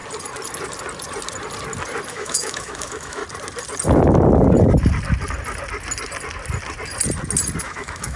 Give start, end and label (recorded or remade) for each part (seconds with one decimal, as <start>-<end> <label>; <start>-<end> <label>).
0.0-2.1 recorded; 2.1-3.2 remade; 3.2-7.6 recorded; 7.6-8.2 remade